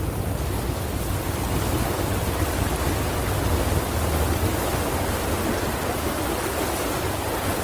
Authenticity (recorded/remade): recorded